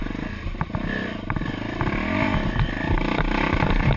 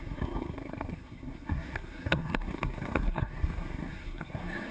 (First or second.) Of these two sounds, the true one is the first